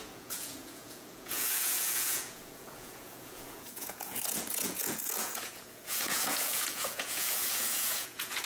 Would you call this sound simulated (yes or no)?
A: yes